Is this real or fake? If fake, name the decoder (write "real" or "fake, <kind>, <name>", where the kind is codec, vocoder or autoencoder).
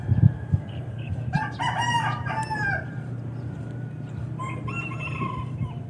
fake, vocoder, BigVGAN v2